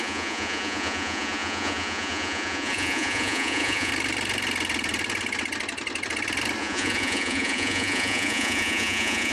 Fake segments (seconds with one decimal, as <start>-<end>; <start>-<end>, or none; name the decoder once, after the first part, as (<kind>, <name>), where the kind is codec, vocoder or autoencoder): 0.0-3.9 (vocoder, Vocos); 6.6-9.3